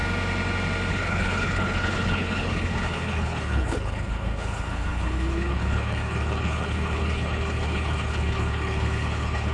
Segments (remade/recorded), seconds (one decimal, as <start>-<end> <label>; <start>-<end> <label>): 0.0-0.9 recorded; 0.9-9.5 remade